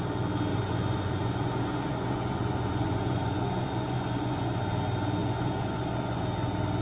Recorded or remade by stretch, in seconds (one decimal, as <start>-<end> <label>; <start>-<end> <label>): 0.0-0.5 recorded; 0.5-4.6 remade; 4.6-5.2 recorded; 5.2-6.2 remade; 6.2-6.8 recorded

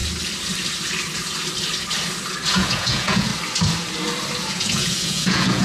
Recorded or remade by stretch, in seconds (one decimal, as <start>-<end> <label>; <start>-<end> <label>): 0.0-2.5 recorded; 2.5-3.3 remade; 3.3-4.5 recorded; 4.5-5.6 remade